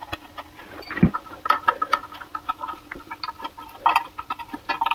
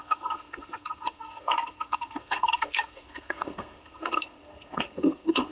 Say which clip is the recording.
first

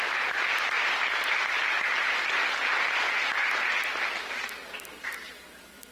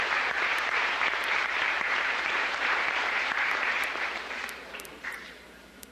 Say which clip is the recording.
first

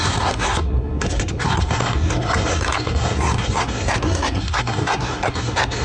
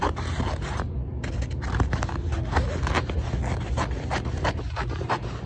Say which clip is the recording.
second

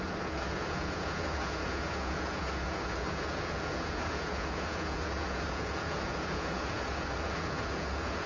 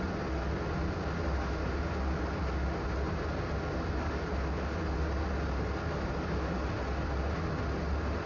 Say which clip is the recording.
second